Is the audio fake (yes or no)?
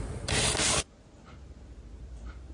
no